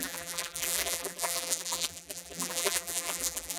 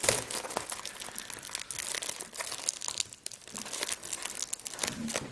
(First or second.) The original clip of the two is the second